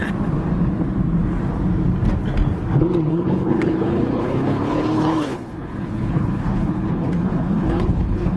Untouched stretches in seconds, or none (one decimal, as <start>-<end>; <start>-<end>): 0.0-3.1